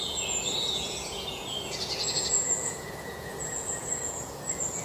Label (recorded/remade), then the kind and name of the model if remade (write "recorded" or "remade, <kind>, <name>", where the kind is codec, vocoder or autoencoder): remade, vocoder, Vocos